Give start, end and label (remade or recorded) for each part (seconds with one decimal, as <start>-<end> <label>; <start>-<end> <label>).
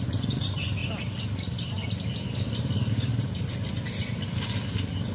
0.0-5.1 recorded